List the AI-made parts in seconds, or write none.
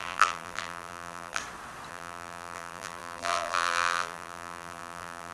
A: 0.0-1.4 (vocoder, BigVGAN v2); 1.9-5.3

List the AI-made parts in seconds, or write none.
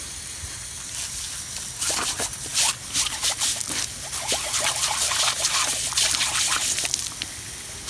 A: none